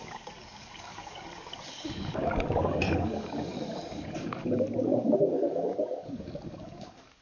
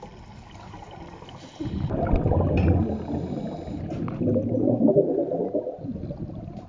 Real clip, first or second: second